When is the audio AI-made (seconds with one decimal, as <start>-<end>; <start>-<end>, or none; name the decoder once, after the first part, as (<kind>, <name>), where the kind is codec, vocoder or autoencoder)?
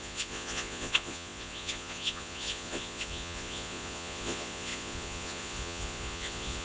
0.0-6.6 (vocoder, Vocos)